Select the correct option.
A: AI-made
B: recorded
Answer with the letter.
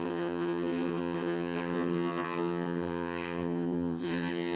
A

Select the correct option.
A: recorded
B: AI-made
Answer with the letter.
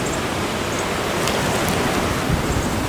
B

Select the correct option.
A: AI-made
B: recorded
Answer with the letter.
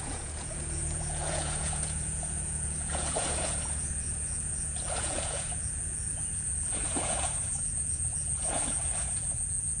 A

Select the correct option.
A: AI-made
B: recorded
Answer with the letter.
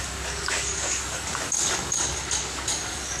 A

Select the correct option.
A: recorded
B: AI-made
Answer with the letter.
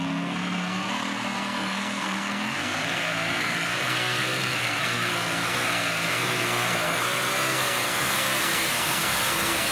B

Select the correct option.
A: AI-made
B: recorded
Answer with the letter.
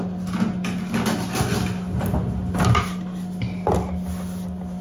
B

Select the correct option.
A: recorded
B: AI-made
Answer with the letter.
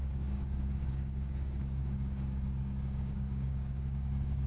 B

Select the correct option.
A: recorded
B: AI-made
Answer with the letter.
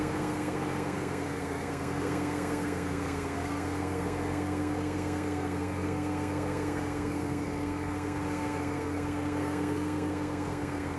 B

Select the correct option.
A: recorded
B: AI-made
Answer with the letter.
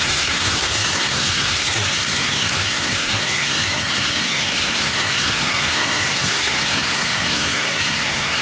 B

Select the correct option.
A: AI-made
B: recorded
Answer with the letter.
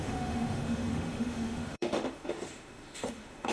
A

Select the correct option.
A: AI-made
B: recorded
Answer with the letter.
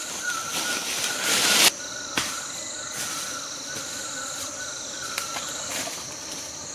B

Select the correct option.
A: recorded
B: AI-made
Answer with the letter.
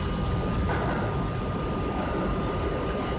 A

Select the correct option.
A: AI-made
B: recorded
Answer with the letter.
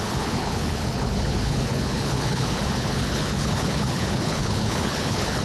A